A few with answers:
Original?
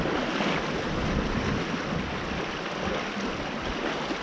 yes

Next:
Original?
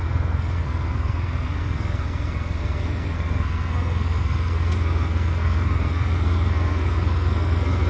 no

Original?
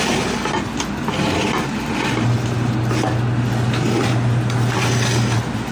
yes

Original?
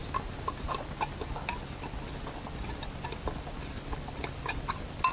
yes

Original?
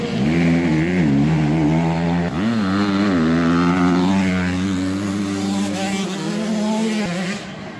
yes